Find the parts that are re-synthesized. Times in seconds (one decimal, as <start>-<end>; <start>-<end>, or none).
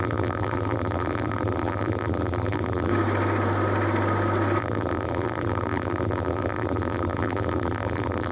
0.0-2.9; 4.6-8.3